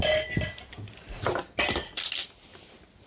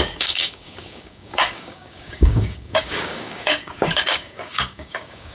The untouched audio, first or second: first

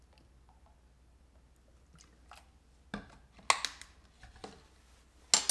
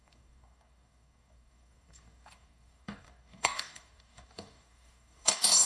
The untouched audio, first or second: first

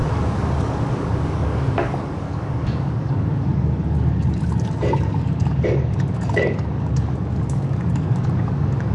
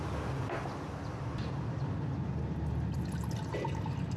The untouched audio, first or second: second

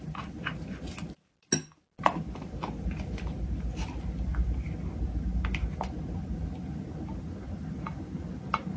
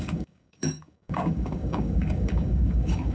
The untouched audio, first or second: first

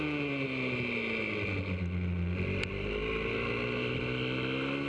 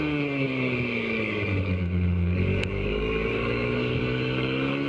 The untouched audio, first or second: first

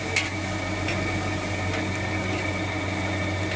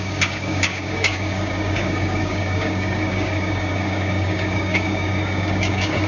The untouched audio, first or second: first